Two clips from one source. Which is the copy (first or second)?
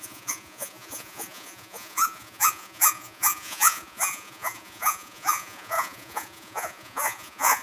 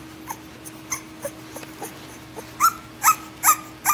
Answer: first